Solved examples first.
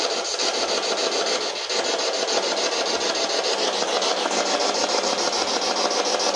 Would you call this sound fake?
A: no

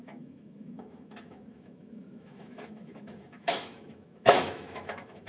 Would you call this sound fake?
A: yes